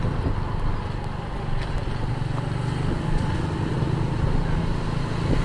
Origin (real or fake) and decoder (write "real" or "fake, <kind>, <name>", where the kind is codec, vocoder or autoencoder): real